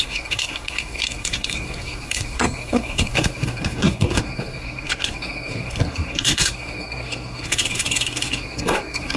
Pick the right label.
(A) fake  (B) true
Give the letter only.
A